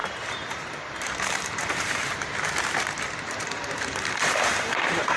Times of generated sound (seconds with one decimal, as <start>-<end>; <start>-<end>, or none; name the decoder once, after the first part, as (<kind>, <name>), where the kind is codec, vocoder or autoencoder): 0.0-2.0 (vocoder, BigVGAN v2); 3.2-5.2